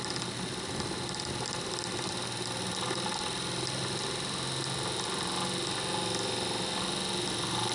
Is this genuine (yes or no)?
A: yes